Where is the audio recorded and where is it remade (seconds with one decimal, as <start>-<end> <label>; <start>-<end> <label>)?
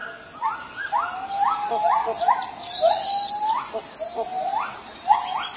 0.0-5.6 recorded